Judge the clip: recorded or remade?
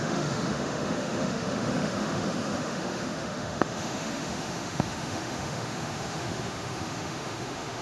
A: remade